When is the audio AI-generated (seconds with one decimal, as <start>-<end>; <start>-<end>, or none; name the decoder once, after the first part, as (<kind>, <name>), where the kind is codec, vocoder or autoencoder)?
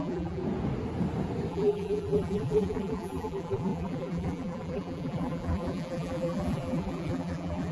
0.0-0.4 (vocoder, BigVGAN v2); 1.5-7.7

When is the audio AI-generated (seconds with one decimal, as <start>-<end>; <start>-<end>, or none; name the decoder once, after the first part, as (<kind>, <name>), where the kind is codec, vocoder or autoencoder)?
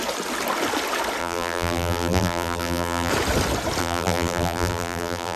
1.2-3.1 (vocoder, BigVGAN v2); 3.8-5.4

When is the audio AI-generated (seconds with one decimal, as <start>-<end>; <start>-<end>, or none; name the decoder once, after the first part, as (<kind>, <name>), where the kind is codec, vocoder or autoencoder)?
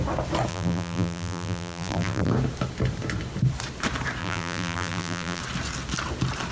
0.5-2.3 (vocoder, BigVGAN v2); 4.2-5.4